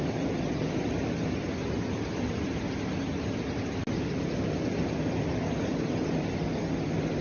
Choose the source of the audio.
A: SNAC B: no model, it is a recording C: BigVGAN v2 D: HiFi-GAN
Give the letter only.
B